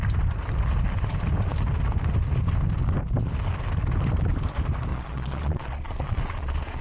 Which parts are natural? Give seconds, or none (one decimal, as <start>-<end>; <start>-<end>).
0.0-4.9